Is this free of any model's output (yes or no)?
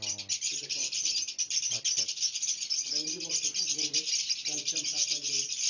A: yes